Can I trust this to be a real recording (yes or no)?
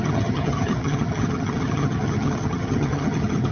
no